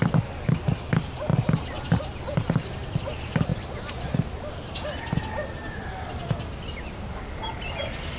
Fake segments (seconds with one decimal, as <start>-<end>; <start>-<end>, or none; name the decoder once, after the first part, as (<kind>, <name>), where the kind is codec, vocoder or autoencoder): none